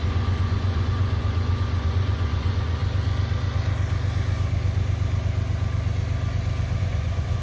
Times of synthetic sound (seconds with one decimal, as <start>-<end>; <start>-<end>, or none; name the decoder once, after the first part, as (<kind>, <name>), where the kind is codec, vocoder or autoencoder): 0.0-2.8 (vocoder, Vocos); 6.8-7.4